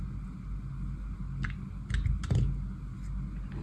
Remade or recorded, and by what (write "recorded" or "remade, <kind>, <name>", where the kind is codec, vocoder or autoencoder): recorded